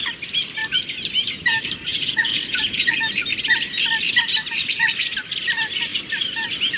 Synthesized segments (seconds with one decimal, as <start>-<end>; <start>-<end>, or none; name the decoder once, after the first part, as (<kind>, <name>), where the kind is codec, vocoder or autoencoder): 1.9-2.9 (vocoder, Vocos)